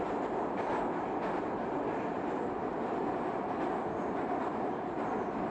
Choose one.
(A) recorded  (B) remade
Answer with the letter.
A